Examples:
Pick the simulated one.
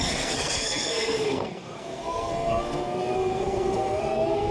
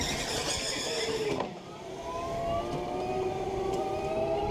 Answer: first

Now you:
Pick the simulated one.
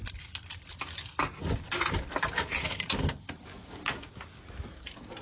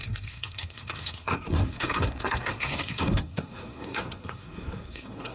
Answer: second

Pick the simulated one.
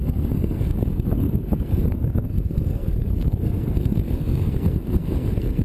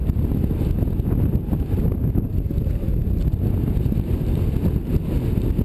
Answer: first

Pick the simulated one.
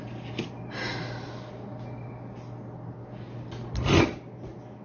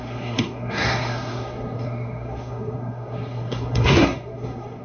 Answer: second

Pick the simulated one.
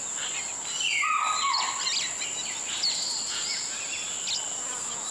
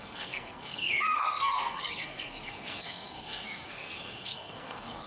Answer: second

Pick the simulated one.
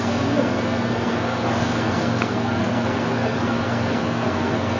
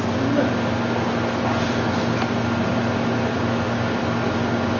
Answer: first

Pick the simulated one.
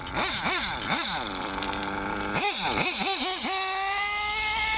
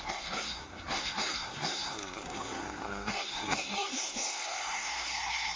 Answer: second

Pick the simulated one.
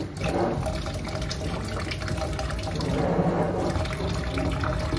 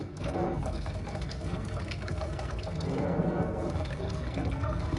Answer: second